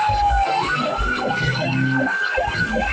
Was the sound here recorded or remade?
remade